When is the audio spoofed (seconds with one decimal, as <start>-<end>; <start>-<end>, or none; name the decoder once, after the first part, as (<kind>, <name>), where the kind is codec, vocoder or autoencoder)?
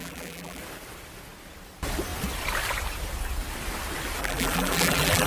0.0-0.6 (vocoder, BigVGAN v2); 4.2-5.3